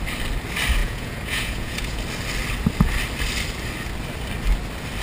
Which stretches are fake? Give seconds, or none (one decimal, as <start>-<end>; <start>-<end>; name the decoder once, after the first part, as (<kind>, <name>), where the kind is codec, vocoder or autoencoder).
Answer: 0.8-2.0 (vocoder, Vocos)